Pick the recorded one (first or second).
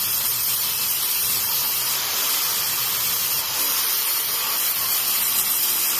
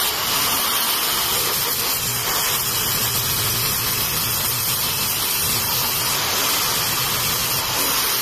second